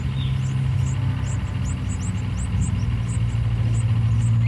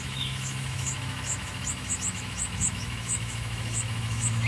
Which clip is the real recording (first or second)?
first